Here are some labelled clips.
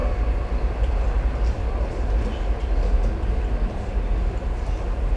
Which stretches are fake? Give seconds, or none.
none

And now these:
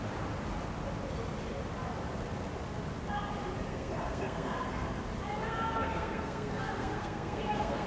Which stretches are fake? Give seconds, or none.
3.7-5.0 (codec, SNAC); 5.4-7.9

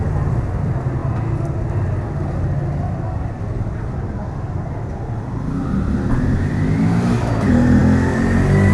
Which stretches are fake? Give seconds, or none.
none

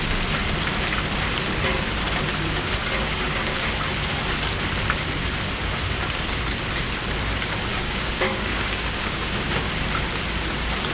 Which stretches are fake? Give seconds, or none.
2.8-3.6 (codec, DAC); 7.7-9.7

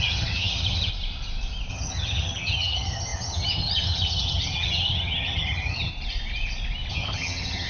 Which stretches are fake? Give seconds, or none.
0.0-0.9 (vocoder, HiFi-GAN); 1.7-5.9; 6.9-7.7